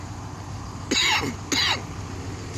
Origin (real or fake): real